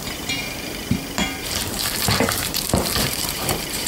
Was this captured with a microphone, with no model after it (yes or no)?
no